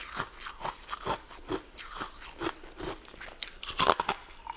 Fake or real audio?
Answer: real